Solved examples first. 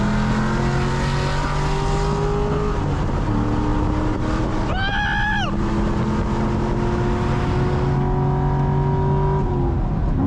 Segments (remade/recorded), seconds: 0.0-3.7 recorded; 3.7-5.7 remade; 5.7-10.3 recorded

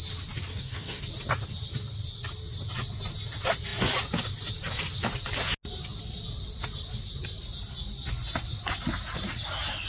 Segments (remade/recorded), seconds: 0.0-0.5 recorded; 0.5-1.0 remade; 1.0-9.9 recorded